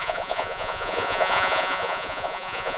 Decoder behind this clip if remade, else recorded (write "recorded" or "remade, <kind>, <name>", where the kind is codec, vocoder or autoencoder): remade, vocoder, Vocos